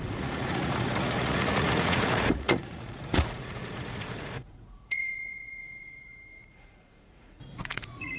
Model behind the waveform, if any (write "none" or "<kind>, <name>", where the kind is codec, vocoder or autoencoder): vocoder, Vocos